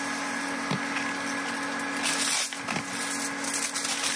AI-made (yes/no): no